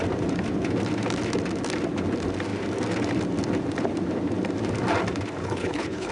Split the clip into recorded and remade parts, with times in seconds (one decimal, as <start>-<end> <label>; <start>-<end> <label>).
0.0-5.4 recorded; 5.4-6.1 remade